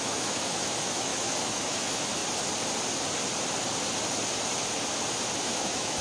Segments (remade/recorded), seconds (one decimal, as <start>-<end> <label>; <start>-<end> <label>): 0.0-2.2 remade; 2.2-5.4 recorded; 5.4-6.0 remade